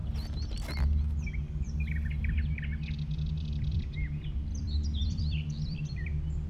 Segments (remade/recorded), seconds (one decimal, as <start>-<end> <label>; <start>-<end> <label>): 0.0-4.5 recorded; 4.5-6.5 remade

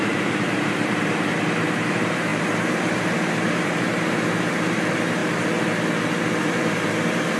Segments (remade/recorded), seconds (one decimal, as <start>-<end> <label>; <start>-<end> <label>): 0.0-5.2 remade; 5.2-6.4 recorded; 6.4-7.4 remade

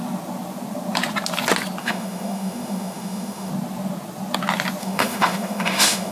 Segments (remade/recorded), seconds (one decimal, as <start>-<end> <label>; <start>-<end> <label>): 0.0-1.8 recorded; 1.8-3.5 remade; 3.5-4.8 recorded; 4.8-6.1 remade

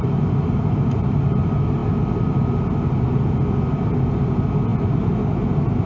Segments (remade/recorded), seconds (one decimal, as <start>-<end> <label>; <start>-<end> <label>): 0.0-5.9 recorded

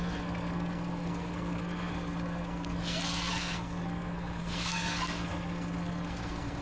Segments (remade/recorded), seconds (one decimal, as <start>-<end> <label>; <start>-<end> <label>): 0.0-6.6 remade

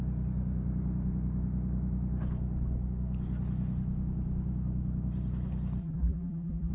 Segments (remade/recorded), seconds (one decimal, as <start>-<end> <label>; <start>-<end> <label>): 0.0-5.8 recorded; 5.8-6.7 remade